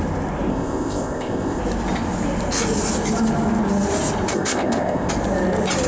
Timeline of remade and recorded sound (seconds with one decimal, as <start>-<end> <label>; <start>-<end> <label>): 0.0-0.5 recorded; 0.5-1.6 remade; 1.6-4.3 recorded; 4.3-5.1 remade; 5.1-5.9 recorded